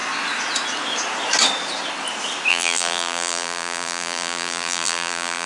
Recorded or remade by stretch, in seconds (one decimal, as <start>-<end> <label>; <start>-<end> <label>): 0.0-2.5 recorded; 2.5-5.5 remade